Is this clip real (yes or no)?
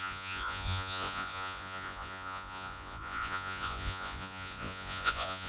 no